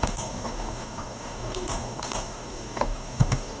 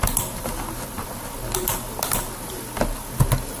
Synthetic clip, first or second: first